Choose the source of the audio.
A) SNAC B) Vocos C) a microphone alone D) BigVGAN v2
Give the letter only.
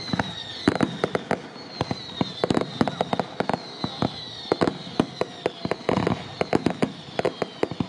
C